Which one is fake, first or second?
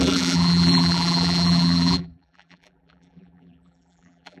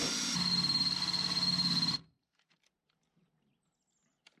first